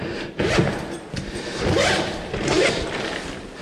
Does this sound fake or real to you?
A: real